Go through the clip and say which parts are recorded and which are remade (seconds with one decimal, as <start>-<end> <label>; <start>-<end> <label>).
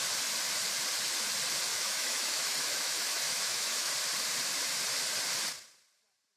0.0-1.7 recorded; 1.7-3.9 remade; 3.9-6.4 recorded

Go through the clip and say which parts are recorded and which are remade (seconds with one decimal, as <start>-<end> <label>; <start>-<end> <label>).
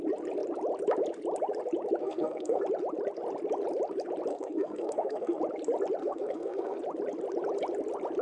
0.0-2.0 recorded; 2.0-2.6 remade; 2.6-4.3 recorded; 4.3-5.4 remade; 5.4-6.0 recorded; 6.0-6.8 remade; 6.8-8.2 recorded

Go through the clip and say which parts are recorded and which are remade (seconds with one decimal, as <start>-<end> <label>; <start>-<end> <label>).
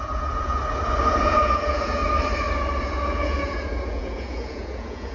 0.0-0.6 remade; 0.6-1.2 recorded; 1.2-2.0 remade; 2.0-2.8 recorded; 2.8-5.1 remade